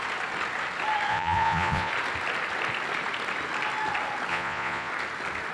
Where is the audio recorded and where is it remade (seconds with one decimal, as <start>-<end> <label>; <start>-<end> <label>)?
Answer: 0.0-1.1 recorded; 1.1-1.9 remade; 1.9-4.3 recorded; 4.3-4.9 remade; 4.9-5.5 recorded